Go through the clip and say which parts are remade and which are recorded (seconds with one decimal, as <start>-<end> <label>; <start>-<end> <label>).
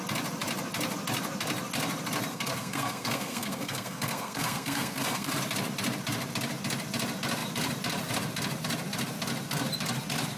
0.0-2.3 recorded; 2.3-5.3 remade; 5.3-10.4 recorded